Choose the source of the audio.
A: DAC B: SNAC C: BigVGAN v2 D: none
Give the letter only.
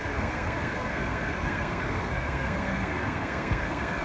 B